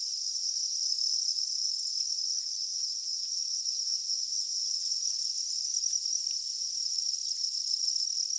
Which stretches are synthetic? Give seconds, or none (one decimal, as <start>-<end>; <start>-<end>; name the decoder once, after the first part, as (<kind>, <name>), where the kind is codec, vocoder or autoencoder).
2.7-4.9 (vocoder, Vocos)